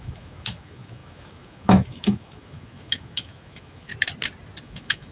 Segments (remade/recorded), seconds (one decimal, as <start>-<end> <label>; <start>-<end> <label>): 0.0-3.9 remade; 3.9-4.6 recorded; 4.6-5.1 remade